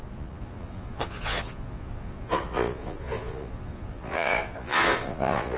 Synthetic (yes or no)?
yes